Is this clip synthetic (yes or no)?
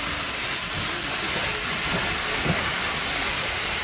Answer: no